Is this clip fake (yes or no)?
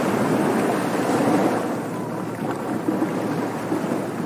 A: no